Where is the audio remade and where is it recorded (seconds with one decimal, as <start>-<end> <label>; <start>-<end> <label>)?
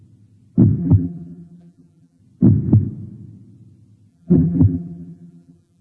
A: 0.0-0.8 recorded; 0.8-2.2 remade; 2.2-4.1 recorded; 4.1-5.8 remade